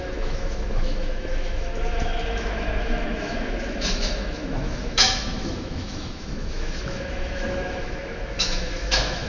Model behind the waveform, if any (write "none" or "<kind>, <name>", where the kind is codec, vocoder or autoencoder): autoencoder, DAC-VAE